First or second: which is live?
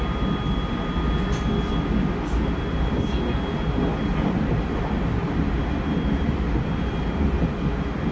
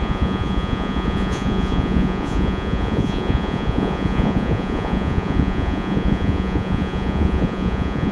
first